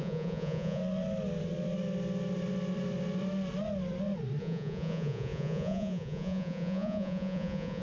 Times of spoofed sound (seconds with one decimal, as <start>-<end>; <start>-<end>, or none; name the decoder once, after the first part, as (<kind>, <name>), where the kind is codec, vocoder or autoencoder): 0.0-0.8 (vocoder, Vocos); 4.4-7.8